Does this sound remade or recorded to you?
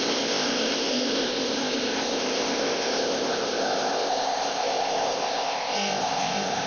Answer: remade